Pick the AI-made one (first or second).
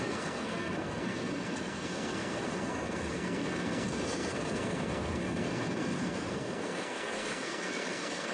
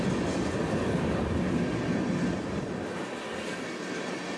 first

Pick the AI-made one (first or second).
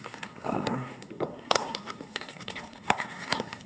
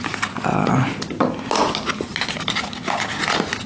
first